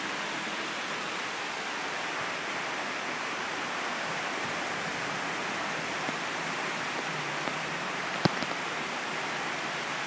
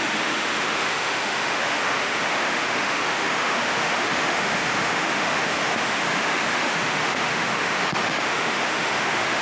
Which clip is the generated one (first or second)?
second